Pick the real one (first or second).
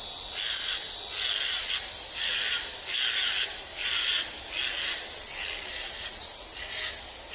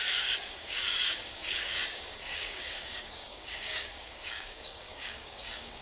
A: first